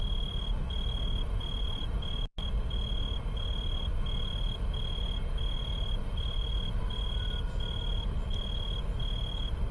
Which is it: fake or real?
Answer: real